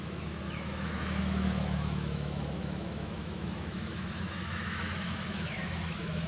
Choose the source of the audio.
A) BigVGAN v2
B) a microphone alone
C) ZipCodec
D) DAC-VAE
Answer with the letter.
D